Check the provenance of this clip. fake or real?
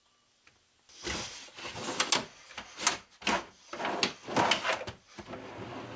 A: real